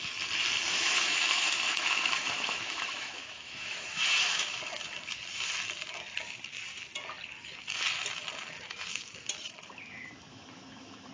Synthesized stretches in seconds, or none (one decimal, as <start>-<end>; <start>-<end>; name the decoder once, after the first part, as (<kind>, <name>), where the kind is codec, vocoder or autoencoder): 0.7-4.6 (autoencoder, DAC-VAE); 10.3-11.1